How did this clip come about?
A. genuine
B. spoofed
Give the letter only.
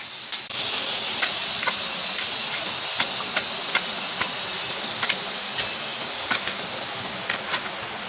A